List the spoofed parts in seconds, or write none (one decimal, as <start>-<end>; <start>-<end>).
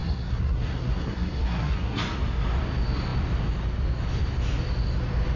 0.0-2.0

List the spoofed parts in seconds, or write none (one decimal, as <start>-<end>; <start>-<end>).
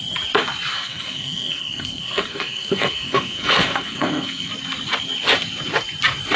0.7-4.5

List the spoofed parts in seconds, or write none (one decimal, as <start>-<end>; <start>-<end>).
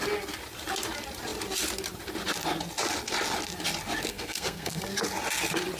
4.1-4.8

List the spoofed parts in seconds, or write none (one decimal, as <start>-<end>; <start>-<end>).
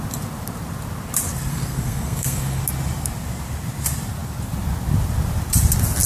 1.5-2.6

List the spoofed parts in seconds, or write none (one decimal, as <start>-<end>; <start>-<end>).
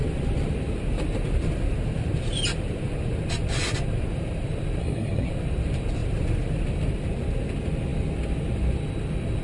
4.8-5.3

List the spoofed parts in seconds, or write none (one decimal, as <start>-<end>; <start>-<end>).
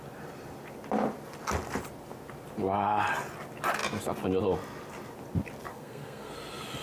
5.7-6.3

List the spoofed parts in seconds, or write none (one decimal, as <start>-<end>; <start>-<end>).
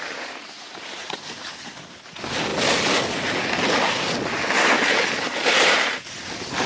none